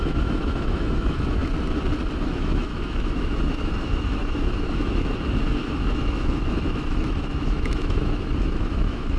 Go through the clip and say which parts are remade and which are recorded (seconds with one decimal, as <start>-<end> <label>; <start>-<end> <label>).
0.0-1.4 remade; 1.4-2.2 recorded; 2.2-9.2 remade